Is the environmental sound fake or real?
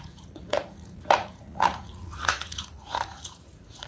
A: fake